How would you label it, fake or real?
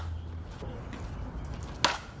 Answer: real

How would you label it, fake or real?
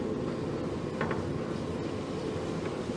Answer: real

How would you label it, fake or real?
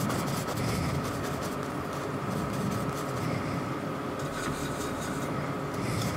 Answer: real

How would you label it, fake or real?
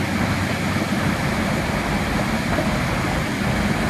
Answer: real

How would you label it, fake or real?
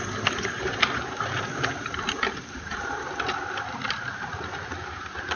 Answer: fake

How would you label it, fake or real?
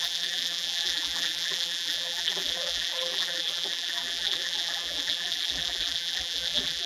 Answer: fake